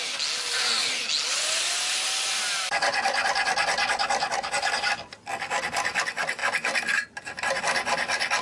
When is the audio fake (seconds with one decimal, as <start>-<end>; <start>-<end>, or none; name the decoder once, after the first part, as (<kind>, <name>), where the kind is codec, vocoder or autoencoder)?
none